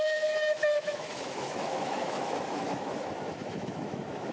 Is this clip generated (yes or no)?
yes